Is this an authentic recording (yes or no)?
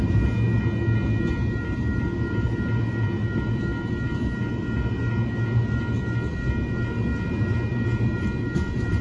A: yes